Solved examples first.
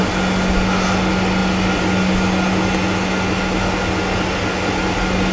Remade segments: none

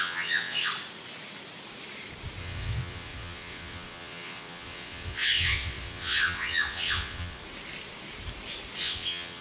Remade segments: 0.0-0.7 (vocoder, WaveNeXt); 2.4-7.4; 8.8-9.4

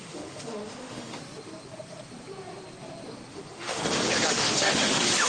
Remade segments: 0.0-1.2 (autoencoder, DAC-VAE); 3.3-3.8; 4.3-5.3

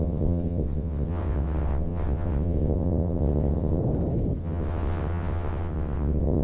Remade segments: 0.0-3.8 (vocoder, WaveNeXt); 4.4-6.4

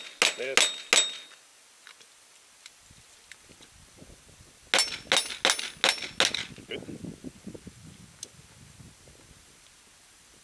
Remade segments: none

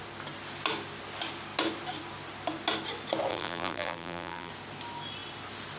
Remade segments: 3.3-4.5 (vocoder, BigVGAN v2)